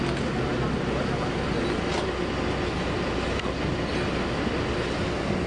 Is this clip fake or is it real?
real